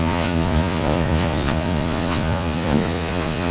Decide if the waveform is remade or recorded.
remade